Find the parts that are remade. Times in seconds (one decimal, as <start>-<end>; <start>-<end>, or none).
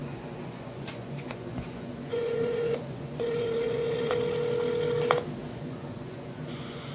0.0-4.1; 5.4-6.9